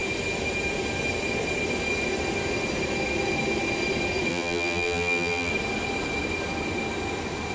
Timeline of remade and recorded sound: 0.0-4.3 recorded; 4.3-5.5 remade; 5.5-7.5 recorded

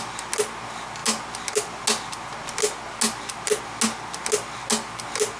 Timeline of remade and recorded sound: 0.0-5.4 recorded

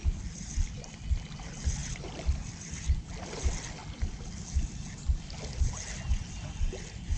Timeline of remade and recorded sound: 0.0-1.8 recorded; 1.8-3.0 remade; 3.0-7.2 recorded